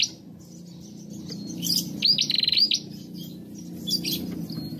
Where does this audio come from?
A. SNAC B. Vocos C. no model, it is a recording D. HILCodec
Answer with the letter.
C